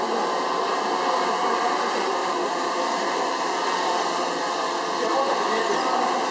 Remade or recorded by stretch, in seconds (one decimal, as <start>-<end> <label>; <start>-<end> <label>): 0.0-2.2 recorded; 2.2-3.5 remade; 3.5-6.3 recorded